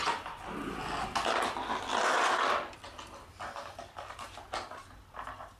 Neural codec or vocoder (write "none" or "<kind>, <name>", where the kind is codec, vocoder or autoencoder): none